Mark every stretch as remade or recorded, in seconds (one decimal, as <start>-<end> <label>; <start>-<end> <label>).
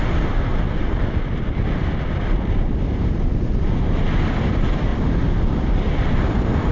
0.0-6.7 recorded